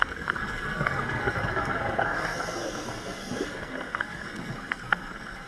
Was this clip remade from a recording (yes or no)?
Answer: yes